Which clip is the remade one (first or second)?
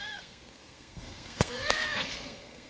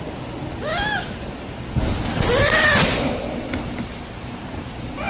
first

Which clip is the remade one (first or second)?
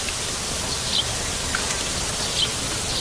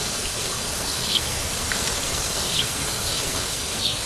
second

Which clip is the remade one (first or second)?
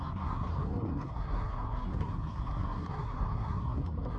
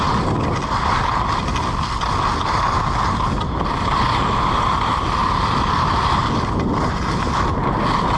first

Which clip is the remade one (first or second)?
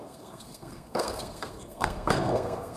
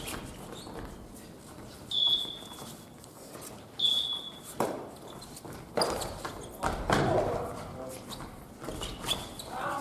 first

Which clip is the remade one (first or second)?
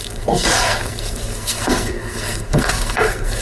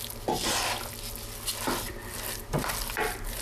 first